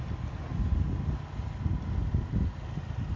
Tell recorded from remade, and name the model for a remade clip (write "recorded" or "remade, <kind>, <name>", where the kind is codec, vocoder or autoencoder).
recorded